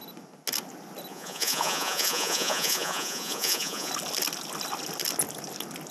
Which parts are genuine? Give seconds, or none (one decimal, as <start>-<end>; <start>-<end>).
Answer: 0.0-1.1; 3.9-5.9